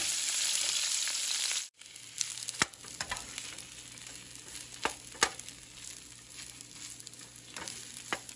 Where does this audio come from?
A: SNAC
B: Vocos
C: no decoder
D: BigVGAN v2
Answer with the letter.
C